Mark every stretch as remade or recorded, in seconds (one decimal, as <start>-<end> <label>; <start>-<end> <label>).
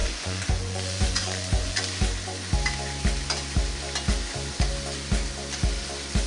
0.0-1.8 remade; 1.8-6.3 recorded